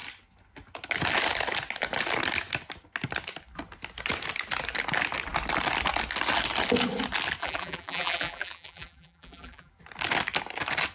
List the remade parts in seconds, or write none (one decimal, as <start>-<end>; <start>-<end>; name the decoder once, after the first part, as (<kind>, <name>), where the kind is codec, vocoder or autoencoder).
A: 7.4-9.7 (vocoder, BigVGAN v2)

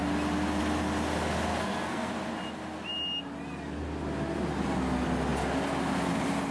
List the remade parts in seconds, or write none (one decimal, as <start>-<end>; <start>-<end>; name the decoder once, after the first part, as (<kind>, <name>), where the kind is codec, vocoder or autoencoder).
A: 1.5-2.1 (codec, SNAC)

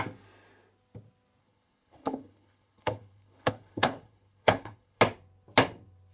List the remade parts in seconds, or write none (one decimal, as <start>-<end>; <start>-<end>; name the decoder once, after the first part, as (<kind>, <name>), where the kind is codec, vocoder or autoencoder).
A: 1.4-5.0 (codec, HILCodec)